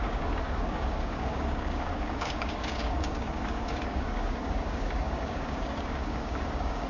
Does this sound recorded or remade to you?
remade